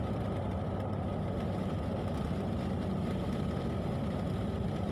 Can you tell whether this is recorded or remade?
recorded